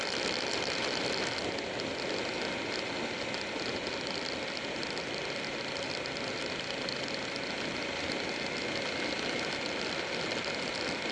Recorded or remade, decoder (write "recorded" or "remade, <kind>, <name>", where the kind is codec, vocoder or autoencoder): recorded